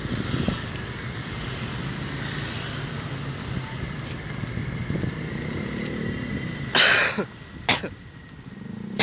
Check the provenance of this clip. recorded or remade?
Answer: recorded